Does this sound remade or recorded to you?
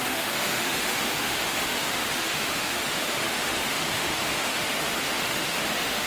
remade